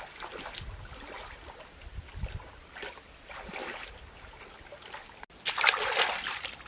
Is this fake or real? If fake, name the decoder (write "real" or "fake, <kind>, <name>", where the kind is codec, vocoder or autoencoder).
real